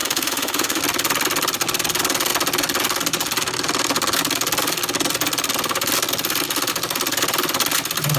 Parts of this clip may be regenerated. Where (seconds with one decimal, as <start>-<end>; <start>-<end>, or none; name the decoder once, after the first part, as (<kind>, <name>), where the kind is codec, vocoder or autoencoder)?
0.0-0.8 (autoencoder, DAC-VAE)